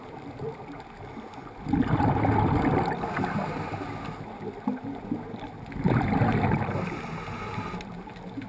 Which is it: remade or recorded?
recorded